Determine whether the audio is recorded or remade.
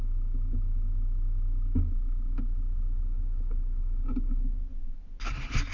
recorded